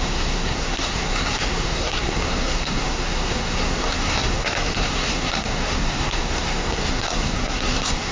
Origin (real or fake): fake